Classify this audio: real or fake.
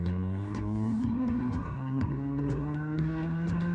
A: fake